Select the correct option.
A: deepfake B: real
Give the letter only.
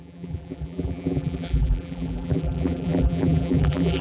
A